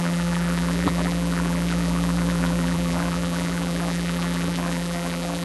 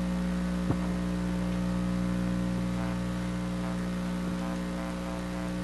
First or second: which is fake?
first